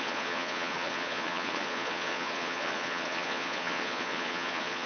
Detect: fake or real fake